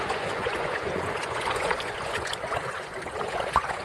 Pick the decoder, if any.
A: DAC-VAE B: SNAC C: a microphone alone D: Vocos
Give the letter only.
D